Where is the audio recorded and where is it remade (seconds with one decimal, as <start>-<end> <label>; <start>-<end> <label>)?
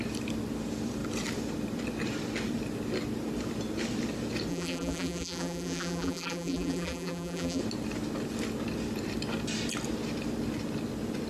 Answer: 0.0-4.5 recorded; 4.5-7.6 remade; 7.6-11.3 recorded